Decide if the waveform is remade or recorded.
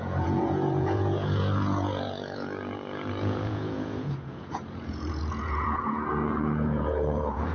remade